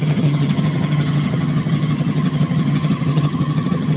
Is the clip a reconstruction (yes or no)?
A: yes